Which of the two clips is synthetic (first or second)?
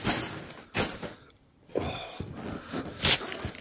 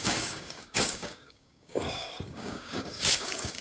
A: second